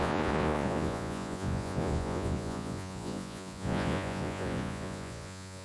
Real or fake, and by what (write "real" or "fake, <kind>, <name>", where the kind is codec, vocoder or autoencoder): fake, vocoder, Vocos